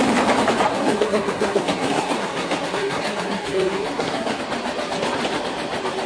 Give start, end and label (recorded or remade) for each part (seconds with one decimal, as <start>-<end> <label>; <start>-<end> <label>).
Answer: 0.0-0.7 recorded; 0.7-4.4 remade; 4.4-6.1 recorded